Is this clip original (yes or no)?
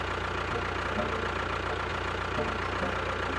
yes